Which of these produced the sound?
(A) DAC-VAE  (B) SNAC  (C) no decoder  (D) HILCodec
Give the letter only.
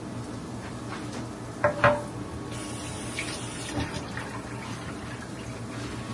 C